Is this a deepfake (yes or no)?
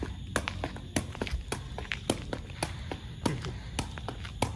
no